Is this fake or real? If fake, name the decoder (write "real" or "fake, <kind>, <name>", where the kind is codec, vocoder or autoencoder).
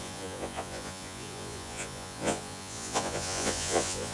fake, vocoder, Vocos